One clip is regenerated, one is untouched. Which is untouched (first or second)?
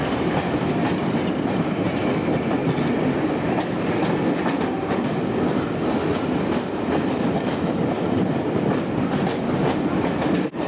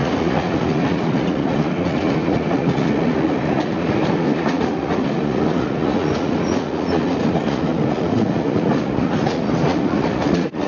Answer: first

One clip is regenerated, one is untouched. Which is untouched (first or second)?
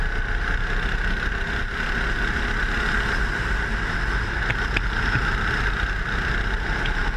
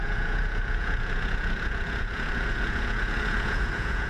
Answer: first